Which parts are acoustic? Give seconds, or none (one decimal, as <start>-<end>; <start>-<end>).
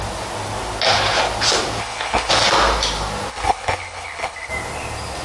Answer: 0.0-1.8; 2.3-3.3; 4.5-5.2